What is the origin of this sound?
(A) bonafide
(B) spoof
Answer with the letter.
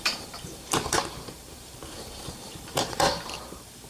B